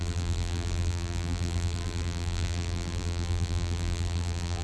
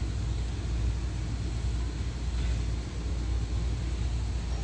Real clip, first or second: second